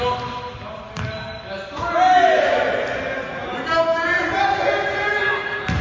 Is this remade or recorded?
recorded